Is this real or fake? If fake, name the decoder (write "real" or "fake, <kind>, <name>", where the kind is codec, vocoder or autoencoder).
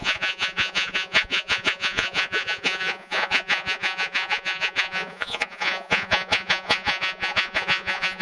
fake, vocoder, Vocos